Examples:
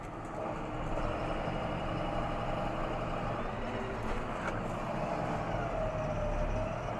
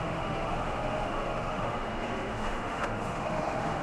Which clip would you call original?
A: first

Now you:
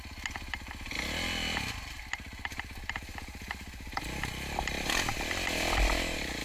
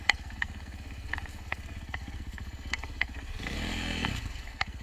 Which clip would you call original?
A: first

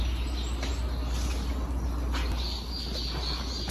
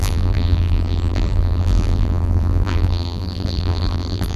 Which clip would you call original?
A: first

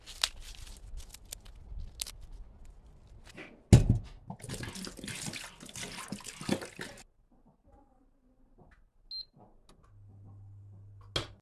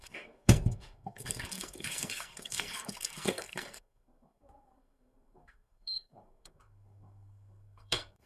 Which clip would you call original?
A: first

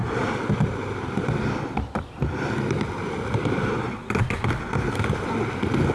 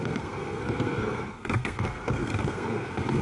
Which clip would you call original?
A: first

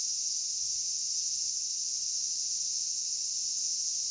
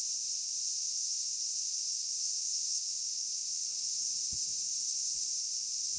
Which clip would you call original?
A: first